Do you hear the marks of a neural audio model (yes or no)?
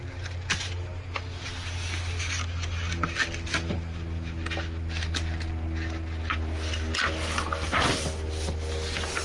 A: no